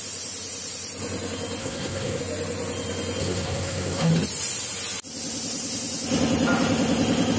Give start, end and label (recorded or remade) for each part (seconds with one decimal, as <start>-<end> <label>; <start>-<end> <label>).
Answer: 0.0-1.6 recorded; 1.6-2.2 remade; 2.2-3.2 recorded; 3.2-4.1 remade; 4.1-7.4 recorded